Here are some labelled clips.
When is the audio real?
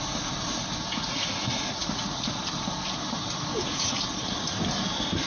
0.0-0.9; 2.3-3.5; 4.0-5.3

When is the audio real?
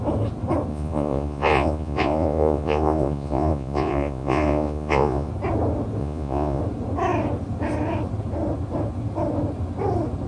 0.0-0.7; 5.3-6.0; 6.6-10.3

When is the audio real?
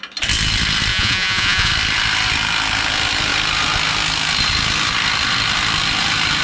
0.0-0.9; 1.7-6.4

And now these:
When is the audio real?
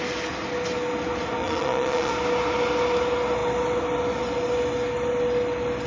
0.0-1.4; 2.1-5.9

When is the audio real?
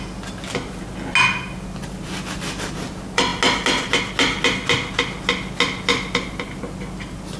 0.0-7.4